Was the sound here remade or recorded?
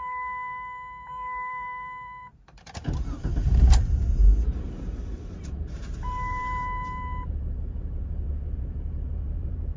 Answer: remade